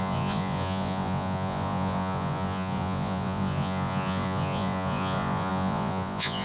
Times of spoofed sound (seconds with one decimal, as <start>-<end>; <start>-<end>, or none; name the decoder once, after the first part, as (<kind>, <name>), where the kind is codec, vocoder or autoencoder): 0.0-6.4 (vocoder, Vocos)